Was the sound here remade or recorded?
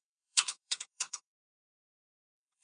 remade